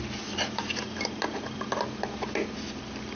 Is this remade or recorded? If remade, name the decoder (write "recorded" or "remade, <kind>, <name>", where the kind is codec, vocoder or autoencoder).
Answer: recorded